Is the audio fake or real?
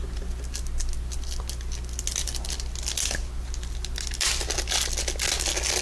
real